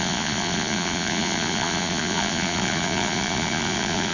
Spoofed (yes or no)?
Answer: yes